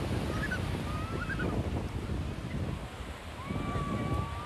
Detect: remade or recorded recorded